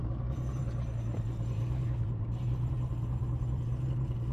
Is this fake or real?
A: real